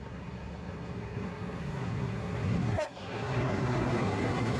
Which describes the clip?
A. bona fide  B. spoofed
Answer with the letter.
B